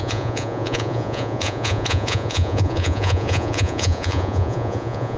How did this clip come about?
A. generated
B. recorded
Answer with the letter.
A